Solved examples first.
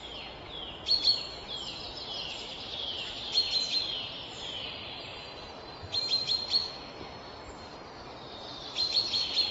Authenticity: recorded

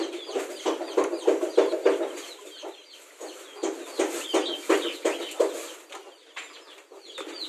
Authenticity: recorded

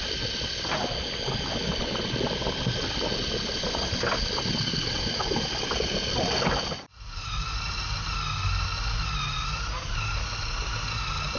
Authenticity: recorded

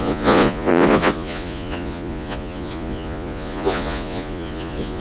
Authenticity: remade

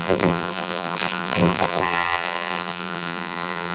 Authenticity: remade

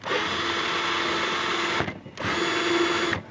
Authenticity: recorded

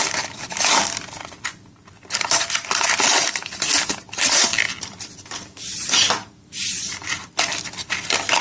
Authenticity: recorded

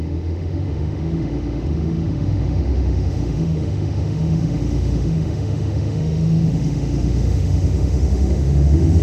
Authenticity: remade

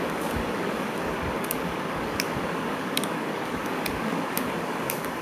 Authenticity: remade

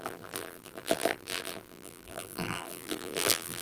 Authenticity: remade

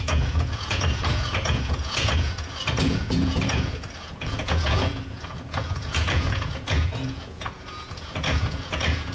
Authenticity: remade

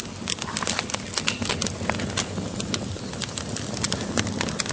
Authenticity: recorded